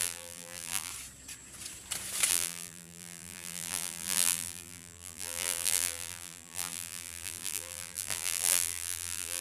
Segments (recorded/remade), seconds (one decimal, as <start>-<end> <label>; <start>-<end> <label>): 0.0-0.9 remade; 0.9-2.3 recorded; 2.3-9.4 remade